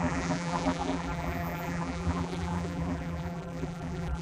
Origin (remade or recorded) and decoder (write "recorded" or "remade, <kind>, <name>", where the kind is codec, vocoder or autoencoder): remade, vocoder, BigVGAN v2